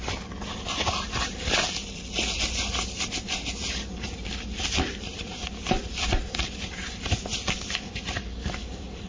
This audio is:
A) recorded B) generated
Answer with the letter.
B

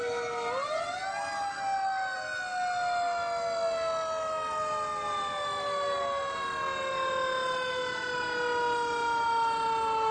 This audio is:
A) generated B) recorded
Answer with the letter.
B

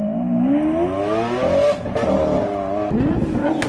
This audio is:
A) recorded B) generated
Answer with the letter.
A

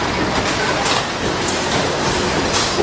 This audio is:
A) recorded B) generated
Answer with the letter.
A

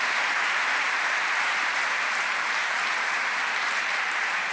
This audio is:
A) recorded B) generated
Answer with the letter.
B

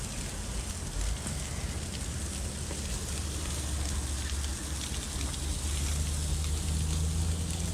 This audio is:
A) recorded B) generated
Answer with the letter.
A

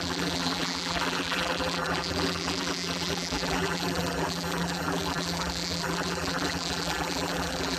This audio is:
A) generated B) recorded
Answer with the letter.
A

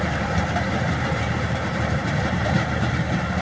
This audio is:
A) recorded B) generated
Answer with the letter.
B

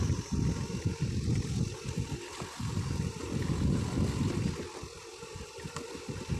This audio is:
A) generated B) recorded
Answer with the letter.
B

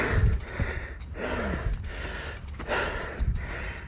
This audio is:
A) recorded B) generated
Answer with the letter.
A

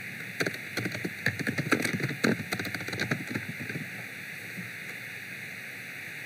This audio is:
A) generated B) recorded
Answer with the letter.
B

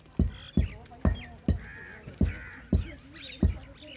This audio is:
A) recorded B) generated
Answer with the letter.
A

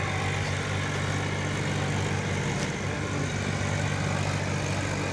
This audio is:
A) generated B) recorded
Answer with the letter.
B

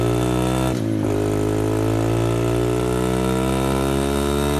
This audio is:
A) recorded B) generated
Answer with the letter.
A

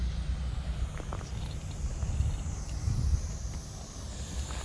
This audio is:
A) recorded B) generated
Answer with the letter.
A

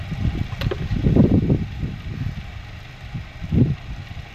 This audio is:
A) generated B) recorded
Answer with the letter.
B